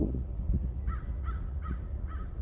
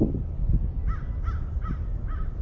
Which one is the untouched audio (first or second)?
second